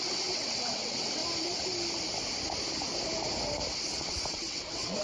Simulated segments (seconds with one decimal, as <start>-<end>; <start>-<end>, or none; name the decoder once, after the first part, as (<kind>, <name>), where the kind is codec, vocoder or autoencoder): 0.0-1.2 (vocoder, WaveNeXt); 3.7-5.0